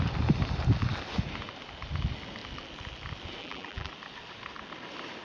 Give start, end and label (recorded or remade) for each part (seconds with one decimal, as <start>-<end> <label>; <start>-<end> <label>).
0.0-3.4 recorded; 3.4-3.9 remade; 3.9-5.2 recorded